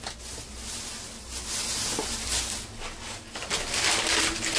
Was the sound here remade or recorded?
recorded